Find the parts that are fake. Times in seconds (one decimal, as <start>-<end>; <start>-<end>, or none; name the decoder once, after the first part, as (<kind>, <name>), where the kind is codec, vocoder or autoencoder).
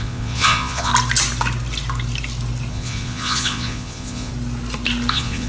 0.0-0.9 (vocoder, Vocos); 2.7-4.3; 5.1-5.5